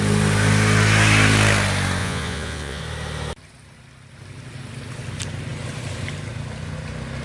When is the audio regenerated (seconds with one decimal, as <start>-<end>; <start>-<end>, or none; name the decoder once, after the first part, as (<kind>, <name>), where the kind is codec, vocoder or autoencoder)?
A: 2.0-2.8 (vocoder, Vocos)